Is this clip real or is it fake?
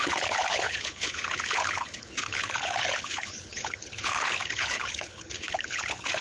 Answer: fake